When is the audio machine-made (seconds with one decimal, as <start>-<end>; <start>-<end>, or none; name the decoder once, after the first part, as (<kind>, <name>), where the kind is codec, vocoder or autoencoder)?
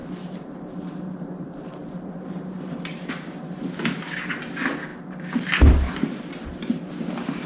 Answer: 0.0-3.1 (vocoder, BigVGAN v2)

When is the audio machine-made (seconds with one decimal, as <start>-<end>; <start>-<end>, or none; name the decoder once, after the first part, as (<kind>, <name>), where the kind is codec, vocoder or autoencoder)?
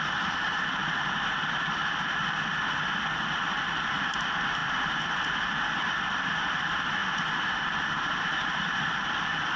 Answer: 0.0-9.6 (vocoder, BigVGAN v2)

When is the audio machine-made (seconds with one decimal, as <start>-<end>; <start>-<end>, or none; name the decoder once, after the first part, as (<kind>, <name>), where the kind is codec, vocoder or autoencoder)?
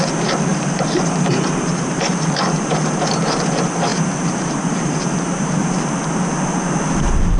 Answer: 0.5-3.3 (vocoder, BigVGAN v2); 3.9-5.6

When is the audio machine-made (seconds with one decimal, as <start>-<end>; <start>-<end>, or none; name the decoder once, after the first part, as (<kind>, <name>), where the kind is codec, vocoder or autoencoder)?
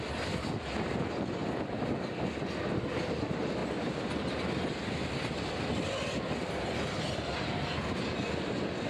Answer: none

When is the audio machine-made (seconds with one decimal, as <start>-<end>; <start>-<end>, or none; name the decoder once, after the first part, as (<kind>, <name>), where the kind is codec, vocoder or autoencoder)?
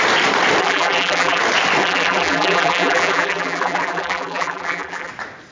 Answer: 0.6-1.4 (vocoder, BigVGAN v2); 1.8-5.1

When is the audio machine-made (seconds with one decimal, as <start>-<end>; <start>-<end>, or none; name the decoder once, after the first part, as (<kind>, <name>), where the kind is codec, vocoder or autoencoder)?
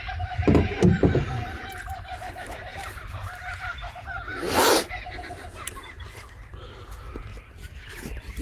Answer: 2.7-3.9 (vocoder, BigVGAN v2); 7.3-8.4